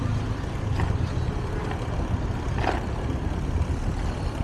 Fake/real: real